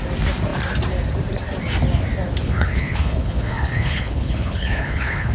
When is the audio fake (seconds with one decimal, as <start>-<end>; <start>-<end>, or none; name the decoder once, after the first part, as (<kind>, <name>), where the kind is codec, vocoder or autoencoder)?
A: 2.4-5.3 (codec, HILCodec)